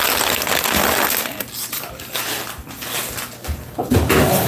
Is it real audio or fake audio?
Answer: real